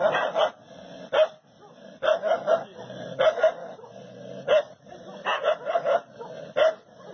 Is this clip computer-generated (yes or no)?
no